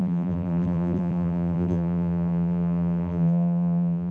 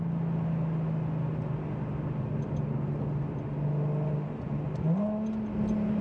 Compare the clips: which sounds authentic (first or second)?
second